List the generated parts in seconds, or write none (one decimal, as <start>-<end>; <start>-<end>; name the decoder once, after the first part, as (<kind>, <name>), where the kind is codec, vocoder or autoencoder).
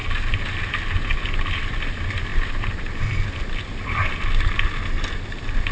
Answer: none